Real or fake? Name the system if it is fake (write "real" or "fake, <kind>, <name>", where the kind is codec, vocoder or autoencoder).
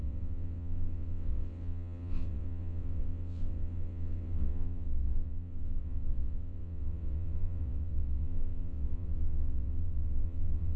fake, vocoder, WaveNeXt